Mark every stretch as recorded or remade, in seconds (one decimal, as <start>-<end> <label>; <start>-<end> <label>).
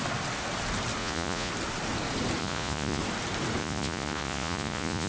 0.0-1.0 recorded; 1.0-1.5 remade; 1.5-2.4 recorded; 2.4-3.0 remade; 3.0-3.6 recorded; 3.6-5.1 remade